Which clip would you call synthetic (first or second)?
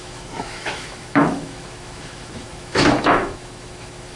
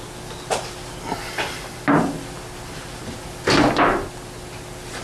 first